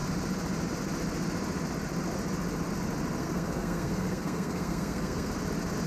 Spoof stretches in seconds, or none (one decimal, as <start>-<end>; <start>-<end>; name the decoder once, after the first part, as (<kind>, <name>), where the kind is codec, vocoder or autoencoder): 3.2-5.3 (codec, SNAC)